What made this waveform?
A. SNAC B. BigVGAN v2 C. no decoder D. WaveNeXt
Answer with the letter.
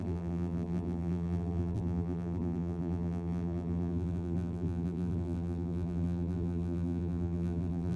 B